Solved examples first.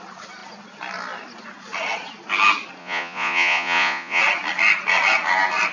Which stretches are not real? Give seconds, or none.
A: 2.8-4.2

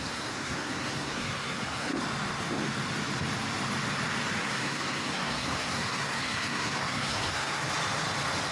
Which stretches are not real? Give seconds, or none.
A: 0.0-1.9; 4.4-7.6

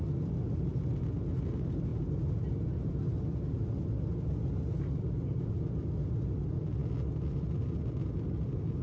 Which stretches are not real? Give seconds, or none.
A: none